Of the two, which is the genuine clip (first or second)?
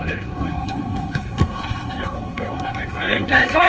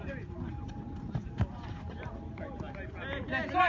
second